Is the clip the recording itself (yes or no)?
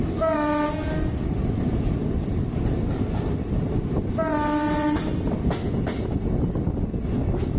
yes